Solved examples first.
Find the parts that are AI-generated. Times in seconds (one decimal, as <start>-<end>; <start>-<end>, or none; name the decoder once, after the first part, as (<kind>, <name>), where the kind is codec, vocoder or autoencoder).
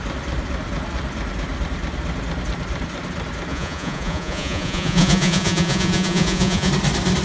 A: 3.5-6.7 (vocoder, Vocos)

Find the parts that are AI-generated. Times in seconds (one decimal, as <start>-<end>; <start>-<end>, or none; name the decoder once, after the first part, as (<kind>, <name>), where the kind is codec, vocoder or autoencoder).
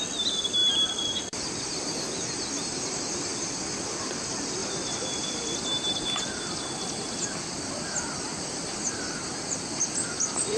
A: none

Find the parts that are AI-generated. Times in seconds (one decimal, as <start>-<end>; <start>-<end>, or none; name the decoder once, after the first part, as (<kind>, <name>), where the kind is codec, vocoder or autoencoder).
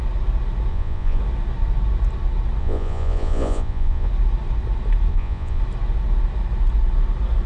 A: 0.7-1.2 (vocoder, Vocos); 2.6-4.1; 5.1-5.6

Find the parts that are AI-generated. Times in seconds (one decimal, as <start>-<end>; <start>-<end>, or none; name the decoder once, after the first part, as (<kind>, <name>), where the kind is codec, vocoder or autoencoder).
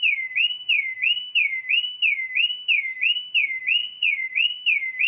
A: 3.8-4.6 (vocoder, Vocos)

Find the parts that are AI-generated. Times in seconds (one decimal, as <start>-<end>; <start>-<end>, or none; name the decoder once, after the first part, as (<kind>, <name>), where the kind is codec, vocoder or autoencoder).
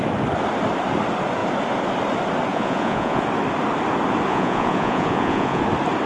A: 2.5-3.2 (vocoder, Vocos); 4.3-5.6